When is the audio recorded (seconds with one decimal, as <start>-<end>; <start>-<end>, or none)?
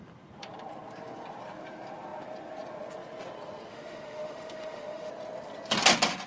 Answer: 0.0-3.7; 5.1-6.3